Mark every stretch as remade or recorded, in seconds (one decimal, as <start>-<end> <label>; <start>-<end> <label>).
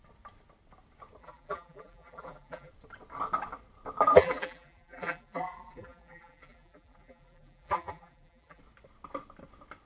0.0-1.2 recorded; 1.2-2.7 remade; 2.7-4.1 recorded; 4.1-8.6 remade; 8.6-9.9 recorded